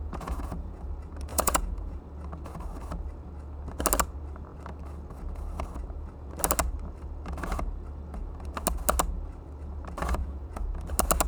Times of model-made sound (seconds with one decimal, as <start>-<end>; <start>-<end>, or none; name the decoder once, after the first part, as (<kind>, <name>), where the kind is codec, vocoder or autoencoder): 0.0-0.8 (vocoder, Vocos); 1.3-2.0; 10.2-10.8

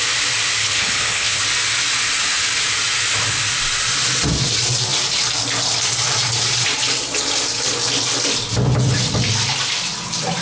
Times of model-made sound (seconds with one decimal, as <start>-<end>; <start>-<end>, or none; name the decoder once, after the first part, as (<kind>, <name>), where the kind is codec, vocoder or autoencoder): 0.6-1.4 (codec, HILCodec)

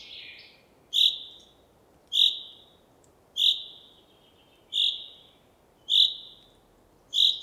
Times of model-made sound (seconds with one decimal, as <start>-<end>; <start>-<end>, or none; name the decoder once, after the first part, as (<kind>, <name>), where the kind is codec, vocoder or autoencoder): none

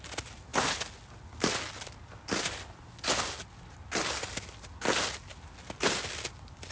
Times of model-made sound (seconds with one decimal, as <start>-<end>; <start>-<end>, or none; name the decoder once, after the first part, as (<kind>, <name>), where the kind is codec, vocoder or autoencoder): none

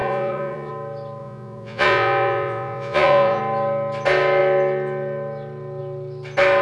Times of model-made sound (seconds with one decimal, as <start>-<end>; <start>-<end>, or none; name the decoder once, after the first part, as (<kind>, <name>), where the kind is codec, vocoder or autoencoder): 0.0-0.7 (vocoder, Vocos); 1.2-3.4